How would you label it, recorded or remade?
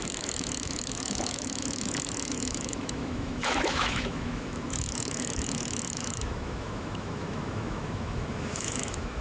remade